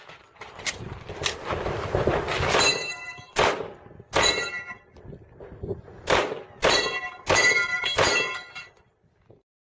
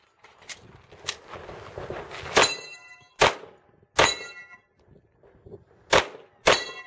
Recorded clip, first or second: second